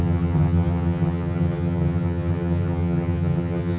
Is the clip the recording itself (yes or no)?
no